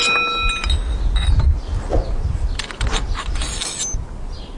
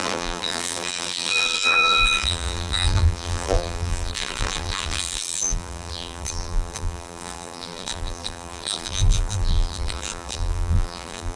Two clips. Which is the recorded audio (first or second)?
first